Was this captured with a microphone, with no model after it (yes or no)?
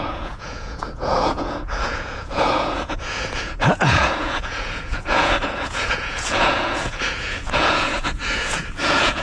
no